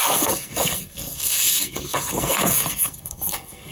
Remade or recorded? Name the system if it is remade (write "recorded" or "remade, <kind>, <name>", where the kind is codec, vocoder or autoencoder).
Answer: remade, codec, SNAC